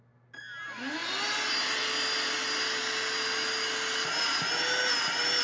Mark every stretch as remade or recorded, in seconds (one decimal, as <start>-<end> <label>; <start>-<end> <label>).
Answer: 0.0-5.4 recorded